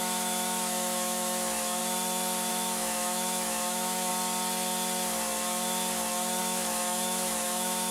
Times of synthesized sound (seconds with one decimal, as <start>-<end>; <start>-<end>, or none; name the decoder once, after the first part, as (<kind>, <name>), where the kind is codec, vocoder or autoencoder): 0.0-1.8 (autoencoder, DAC-VAE); 2.5-4.1; 6.4-7.9